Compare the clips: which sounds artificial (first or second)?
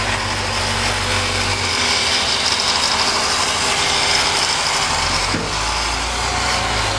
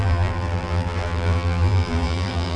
second